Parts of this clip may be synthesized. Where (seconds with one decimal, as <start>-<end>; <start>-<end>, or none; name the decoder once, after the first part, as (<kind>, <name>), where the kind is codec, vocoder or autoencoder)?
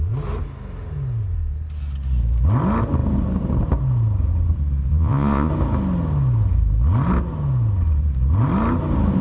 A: 4.9-5.5 (vocoder, Vocos)